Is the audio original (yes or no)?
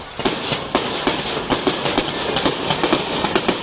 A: yes